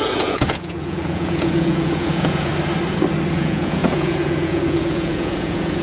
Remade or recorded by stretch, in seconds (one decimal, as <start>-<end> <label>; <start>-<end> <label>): 0.0-2.5 remade; 2.5-3.3 recorded; 3.3-5.8 remade

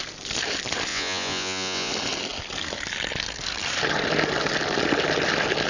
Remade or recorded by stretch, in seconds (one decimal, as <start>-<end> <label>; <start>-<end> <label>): 0.0-0.9 recorded; 0.9-1.9 remade; 1.9-5.7 recorded